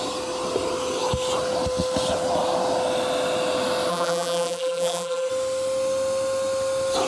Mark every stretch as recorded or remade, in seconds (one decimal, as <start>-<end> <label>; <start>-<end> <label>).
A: 0.0-3.9 recorded; 3.9-5.3 remade; 5.3-7.1 recorded